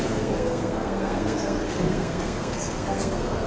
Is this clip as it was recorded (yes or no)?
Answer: no